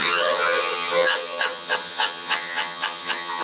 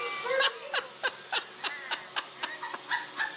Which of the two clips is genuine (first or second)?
second